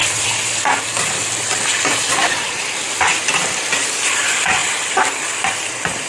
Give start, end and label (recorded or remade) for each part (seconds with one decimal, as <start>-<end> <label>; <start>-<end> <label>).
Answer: 0.0-3.7 recorded; 3.7-6.1 remade